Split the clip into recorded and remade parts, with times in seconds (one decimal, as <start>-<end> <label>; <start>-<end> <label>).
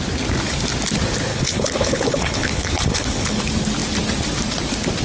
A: 0.0-1.3 recorded; 1.3-3.4 remade; 3.4-5.0 recorded